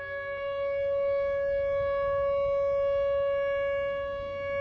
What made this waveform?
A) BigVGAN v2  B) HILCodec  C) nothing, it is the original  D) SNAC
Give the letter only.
C